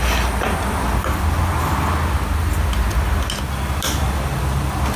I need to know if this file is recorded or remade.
recorded